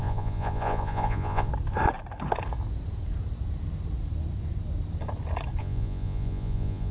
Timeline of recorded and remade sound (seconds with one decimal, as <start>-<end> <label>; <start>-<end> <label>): 0.0-1.5 remade; 1.5-5.6 recorded; 5.6-6.9 remade